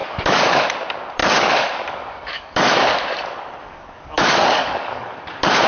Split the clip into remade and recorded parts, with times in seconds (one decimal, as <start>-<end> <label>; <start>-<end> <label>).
0.0-0.6 remade; 0.6-1.2 recorded; 1.2-2.8 remade; 2.8-3.6 recorded; 3.6-5.2 remade; 5.2-5.7 recorded